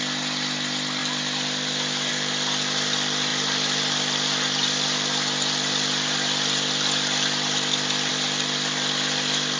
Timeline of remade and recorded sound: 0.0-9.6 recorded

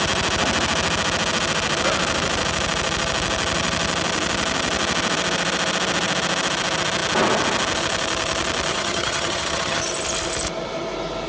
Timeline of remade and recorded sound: 0.0-8.7 recorded; 8.7-9.8 remade; 9.8-11.3 recorded

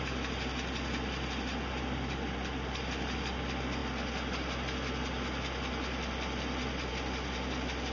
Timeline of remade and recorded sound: 0.0-7.9 recorded

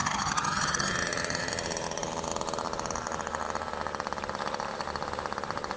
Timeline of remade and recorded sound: 0.0-0.9 remade; 0.9-5.8 recorded

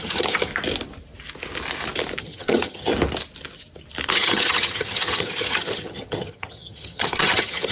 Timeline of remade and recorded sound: 0.0-0.5 remade; 0.5-2.2 recorded; 2.2-2.9 remade; 2.9-4.1 recorded; 4.1-7.7 remade

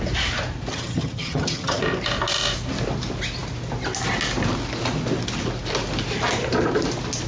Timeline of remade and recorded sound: 0.0-0.7 recorded; 0.7-1.8 remade; 1.8-7.3 recorded

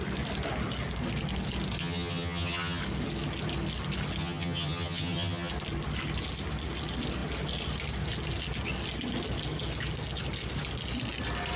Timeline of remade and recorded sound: 0.0-1.8 recorded; 1.8-2.8 remade; 2.8-4.2 recorded; 4.2-5.5 remade; 5.5-11.6 recorded

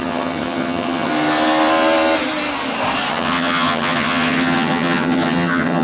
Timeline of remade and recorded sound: 0.0-1.1 remade; 1.1-3.1 recorded; 3.1-5.8 remade